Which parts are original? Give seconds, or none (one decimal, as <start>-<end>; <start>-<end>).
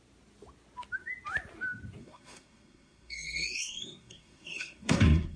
0.0-2.0